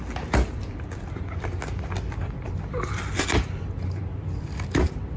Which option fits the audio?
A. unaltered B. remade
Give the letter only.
A